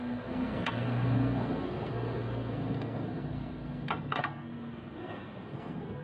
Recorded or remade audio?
remade